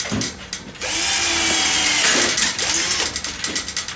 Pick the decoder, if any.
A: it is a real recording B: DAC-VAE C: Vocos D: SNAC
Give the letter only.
A